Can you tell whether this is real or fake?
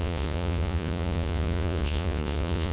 fake